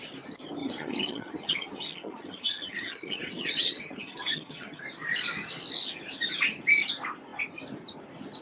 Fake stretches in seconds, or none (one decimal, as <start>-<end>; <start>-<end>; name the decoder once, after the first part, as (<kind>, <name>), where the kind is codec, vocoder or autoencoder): 0.6-4.8 (vocoder, HiFi-GAN)